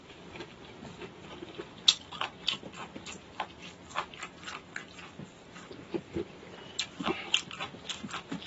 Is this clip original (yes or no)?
yes